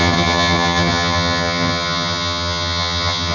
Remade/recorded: remade